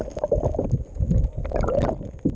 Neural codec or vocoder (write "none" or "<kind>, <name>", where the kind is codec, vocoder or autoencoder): none